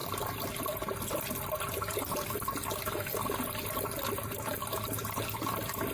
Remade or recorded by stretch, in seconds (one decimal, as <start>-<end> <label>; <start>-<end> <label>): 0.0-5.9 recorded